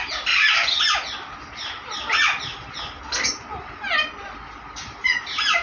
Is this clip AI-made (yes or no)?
no